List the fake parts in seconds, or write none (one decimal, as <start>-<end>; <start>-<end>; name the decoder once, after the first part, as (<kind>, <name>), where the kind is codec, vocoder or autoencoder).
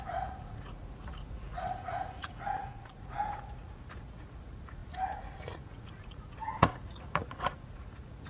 0.0-8.3 (vocoder, Vocos)